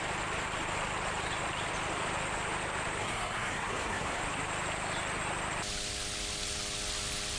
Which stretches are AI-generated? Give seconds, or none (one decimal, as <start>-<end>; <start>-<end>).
3.0-4.2